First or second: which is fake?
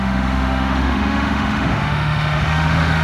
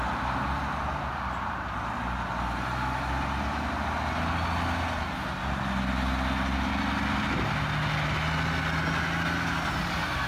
first